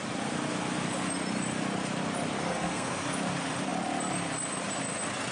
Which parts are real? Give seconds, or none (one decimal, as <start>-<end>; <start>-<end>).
0.0-2.5; 3.0-5.3